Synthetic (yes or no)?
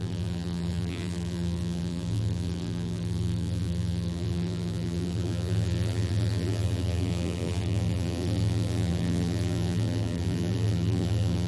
yes